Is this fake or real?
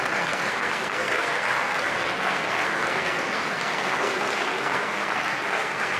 fake